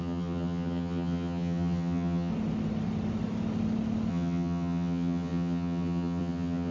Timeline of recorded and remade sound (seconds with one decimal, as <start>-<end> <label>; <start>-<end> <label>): 0.0-2.3 remade; 2.3-4.1 recorded; 4.1-6.7 remade